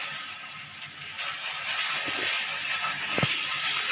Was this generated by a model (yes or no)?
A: no